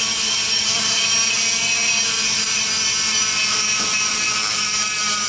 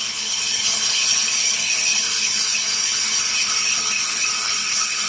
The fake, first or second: second